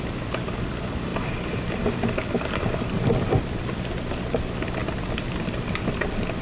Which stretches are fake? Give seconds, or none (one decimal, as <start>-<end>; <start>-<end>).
none